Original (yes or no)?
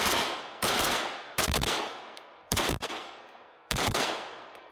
no